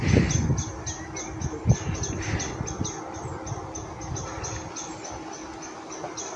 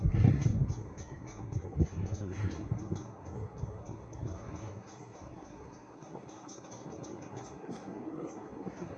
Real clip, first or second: first